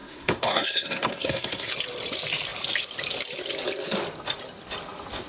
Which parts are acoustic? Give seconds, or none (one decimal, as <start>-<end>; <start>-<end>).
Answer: 1.7-5.3